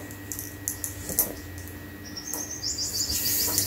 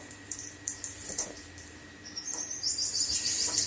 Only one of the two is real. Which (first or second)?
first